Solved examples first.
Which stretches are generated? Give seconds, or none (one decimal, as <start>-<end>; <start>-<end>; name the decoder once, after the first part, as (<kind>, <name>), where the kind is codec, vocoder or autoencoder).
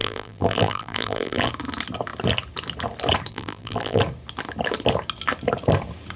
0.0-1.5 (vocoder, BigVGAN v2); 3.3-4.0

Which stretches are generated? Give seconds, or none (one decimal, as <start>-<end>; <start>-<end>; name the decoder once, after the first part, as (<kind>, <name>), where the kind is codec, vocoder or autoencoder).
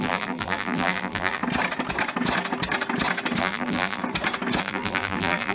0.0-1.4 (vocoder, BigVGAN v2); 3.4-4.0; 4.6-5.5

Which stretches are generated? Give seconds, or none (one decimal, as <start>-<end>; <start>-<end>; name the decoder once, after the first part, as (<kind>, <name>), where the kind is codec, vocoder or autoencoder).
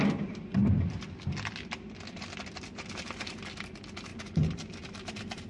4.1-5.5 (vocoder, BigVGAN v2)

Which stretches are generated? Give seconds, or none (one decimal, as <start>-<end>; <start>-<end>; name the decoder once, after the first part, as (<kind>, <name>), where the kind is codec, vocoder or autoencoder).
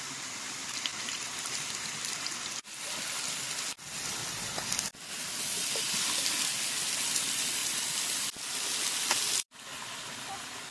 7.6-8.3 (vocoder, BigVGAN v2)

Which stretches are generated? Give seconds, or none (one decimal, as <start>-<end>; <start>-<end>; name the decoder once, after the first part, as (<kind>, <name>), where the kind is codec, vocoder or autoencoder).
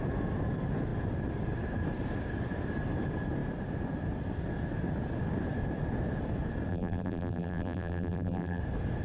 6.7-8.6 (vocoder, BigVGAN v2)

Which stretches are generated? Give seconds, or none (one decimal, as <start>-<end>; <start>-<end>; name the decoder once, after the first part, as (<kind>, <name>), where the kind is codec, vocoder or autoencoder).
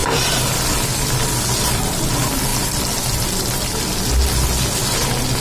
none